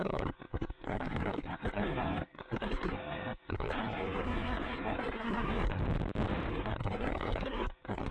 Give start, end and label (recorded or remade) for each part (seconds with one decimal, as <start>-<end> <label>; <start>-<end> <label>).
0.0-5.8 remade; 5.8-6.5 recorded; 6.5-8.1 remade